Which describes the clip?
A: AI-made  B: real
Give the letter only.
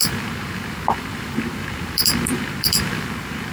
A